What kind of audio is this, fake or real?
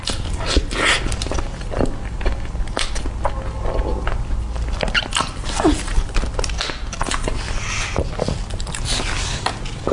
real